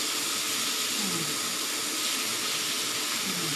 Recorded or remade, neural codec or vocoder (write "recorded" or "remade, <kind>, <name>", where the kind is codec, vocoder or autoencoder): recorded